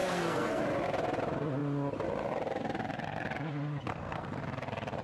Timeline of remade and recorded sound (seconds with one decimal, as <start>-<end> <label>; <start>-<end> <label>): 0.0-0.6 remade; 0.6-3.9 recorded; 3.9-4.4 remade; 4.4-5.0 recorded